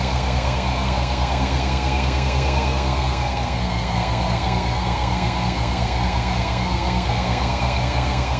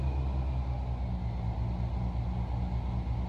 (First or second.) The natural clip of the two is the second